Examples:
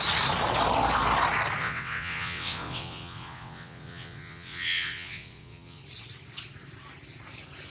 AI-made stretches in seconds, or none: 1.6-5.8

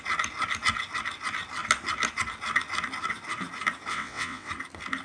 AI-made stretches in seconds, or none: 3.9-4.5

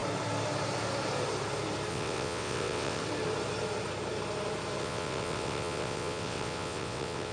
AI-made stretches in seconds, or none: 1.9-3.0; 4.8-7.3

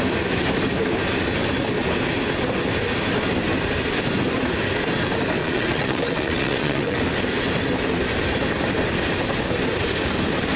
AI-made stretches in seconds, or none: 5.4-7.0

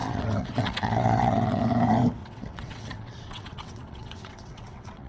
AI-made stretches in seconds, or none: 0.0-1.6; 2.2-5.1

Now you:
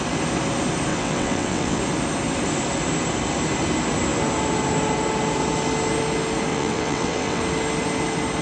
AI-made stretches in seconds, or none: 0.9-1.8; 6.5-7.4

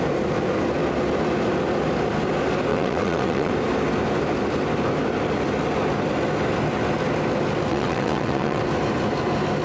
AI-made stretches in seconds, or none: 2.7-3.5; 7.7-8.6